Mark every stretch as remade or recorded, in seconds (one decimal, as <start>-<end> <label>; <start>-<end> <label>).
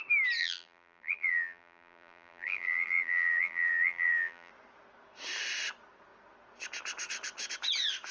0.0-0.4 recorded; 0.4-4.5 remade; 4.5-8.1 recorded